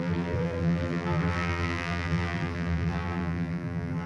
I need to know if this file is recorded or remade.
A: remade